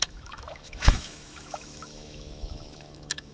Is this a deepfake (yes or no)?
yes